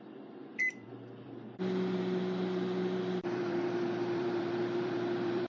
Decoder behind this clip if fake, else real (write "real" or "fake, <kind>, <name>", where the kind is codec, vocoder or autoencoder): fake, vocoder, BigVGAN v2